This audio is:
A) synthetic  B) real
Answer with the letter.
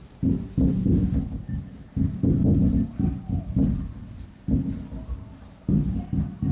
B